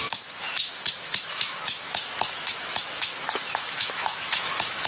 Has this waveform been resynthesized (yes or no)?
yes